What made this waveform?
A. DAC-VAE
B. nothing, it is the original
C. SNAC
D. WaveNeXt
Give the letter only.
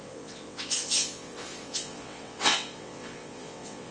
D